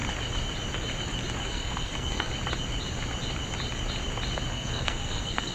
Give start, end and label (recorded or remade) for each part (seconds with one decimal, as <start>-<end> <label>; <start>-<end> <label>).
0.0-1.4 recorded; 1.4-2.3 remade; 2.3-4.5 recorded; 4.5-5.5 remade